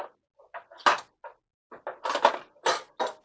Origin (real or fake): real